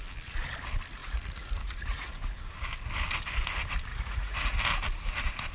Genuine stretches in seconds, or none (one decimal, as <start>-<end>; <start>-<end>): 0.0-1.0; 2.1-3.9; 4.6-5.5

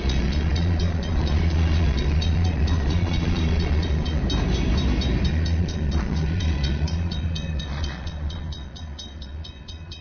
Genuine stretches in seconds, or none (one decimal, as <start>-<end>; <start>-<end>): 4.2-5.3

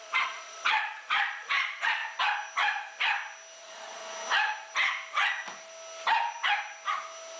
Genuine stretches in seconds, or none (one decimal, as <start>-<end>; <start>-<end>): 2.0-3.6; 4.0-7.4

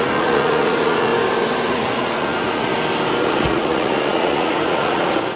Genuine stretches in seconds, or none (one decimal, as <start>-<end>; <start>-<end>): 1.1-1.7; 2.7-3.2

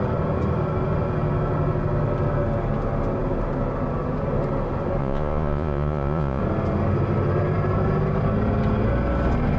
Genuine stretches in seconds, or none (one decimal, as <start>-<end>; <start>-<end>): 0.0-5.0; 6.4-9.6

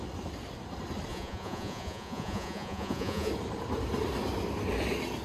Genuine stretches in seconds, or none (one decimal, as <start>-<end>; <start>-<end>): 0.0-1.1; 3.3-5.2